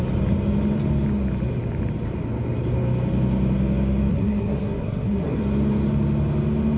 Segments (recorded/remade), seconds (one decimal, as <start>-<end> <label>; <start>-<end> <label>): 0.0-4.1 recorded; 4.1-5.4 remade; 5.4-6.8 recorded